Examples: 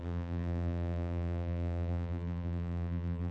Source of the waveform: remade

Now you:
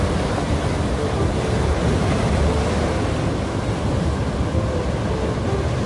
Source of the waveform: recorded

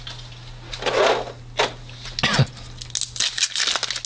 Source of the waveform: recorded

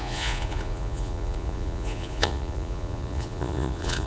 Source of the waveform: remade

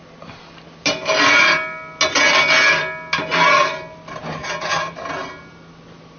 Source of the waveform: recorded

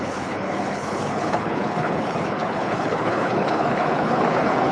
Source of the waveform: remade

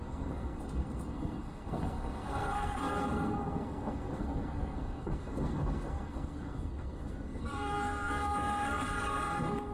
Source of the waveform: remade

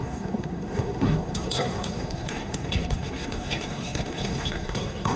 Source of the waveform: remade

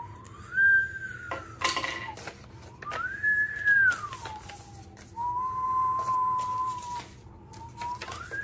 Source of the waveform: recorded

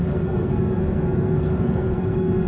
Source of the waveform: remade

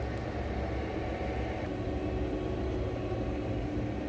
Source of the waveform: recorded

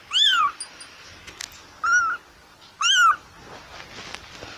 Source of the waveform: recorded